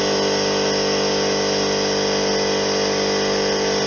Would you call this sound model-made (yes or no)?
no